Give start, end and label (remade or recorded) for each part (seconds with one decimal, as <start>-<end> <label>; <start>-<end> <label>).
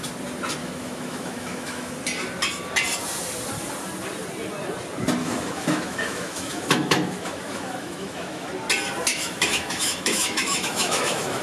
0.0-0.6 recorded; 0.6-1.9 remade; 1.9-5.2 recorded; 5.2-8.5 remade; 8.5-9.1 recorded; 9.1-11.4 remade